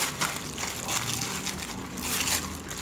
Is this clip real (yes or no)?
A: yes